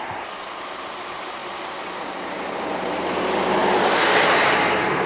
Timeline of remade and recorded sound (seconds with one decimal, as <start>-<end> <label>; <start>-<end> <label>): 0.0-5.1 recorded